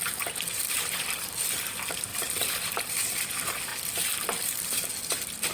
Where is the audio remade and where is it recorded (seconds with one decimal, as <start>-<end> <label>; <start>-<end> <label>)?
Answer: 0.0-2.1 remade; 2.1-2.8 recorded; 2.8-3.7 remade; 3.7-5.5 recorded